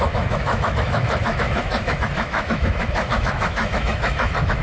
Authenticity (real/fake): fake